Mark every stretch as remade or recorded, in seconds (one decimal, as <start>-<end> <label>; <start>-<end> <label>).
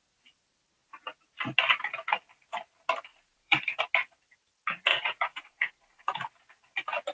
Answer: 0.0-3.1 recorded; 3.1-3.8 remade; 3.8-4.9 recorded; 4.9-6.3 remade; 6.3-7.1 recorded